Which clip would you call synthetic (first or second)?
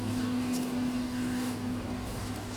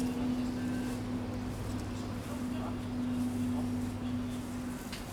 first